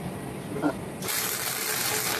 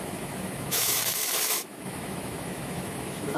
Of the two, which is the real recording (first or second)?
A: first